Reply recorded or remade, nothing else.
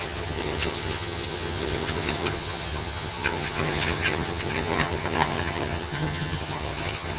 remade